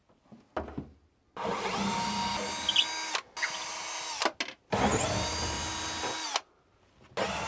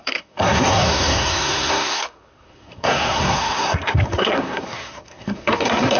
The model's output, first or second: second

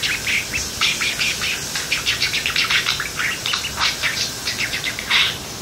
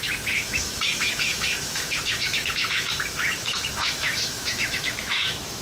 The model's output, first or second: second